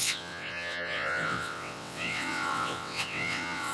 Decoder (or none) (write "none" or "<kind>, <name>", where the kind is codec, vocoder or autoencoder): vocoder, WaveNeXt